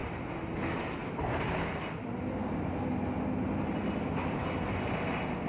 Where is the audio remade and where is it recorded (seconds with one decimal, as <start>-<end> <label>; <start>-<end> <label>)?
0.0-5.5 recorded